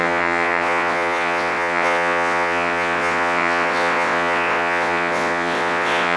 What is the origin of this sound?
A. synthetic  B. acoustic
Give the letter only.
A